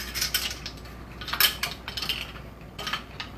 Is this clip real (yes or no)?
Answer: yes